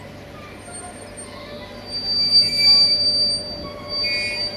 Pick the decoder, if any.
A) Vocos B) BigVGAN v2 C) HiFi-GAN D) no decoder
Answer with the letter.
D